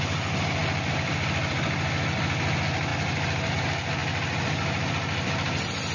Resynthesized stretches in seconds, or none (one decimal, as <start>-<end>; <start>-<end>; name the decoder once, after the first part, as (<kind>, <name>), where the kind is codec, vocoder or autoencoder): none